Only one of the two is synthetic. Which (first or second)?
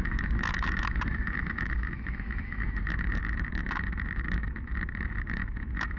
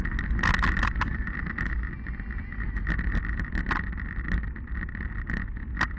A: first